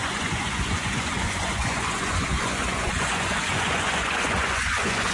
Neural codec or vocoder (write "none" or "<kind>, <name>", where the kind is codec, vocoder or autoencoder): vocoder, Vocos